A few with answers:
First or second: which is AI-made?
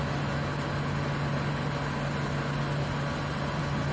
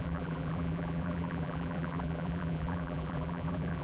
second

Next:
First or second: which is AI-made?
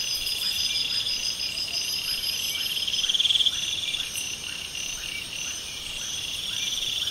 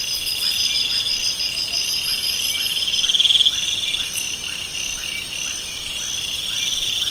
first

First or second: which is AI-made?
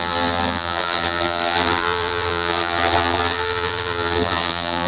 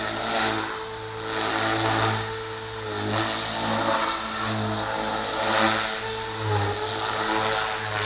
first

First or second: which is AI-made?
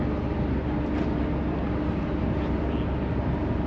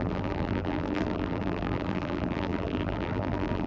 second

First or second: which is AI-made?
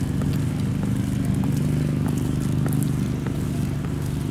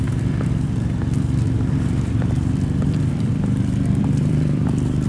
second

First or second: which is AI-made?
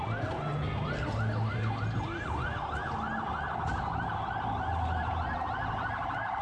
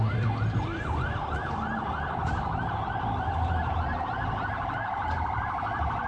second